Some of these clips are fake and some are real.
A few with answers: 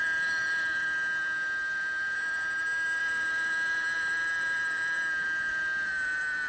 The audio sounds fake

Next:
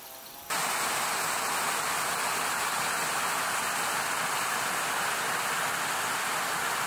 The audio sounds real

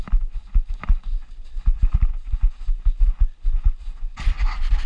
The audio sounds real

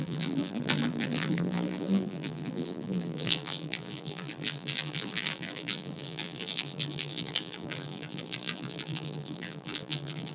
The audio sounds fake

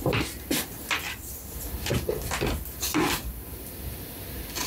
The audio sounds fake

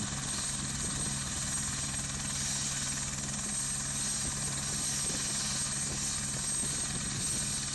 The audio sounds real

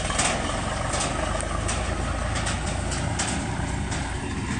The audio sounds real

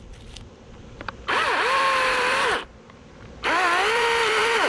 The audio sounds fake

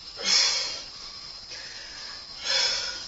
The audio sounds real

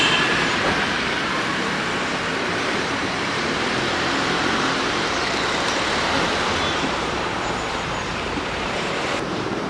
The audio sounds fake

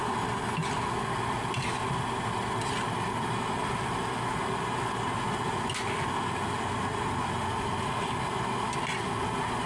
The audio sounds real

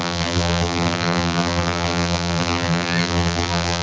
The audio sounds fake